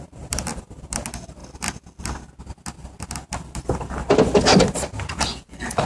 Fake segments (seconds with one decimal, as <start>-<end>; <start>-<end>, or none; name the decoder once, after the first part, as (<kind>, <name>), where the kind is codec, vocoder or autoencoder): 5.3-5.9 (vocoder, Vocos)